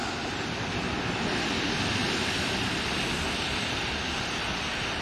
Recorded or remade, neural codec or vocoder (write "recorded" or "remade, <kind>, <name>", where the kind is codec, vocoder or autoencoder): remade, vocoder, BigVGAN v2